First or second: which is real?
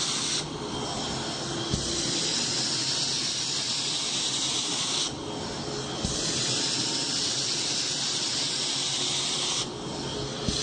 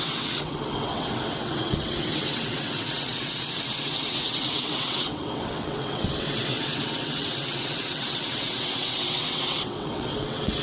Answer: first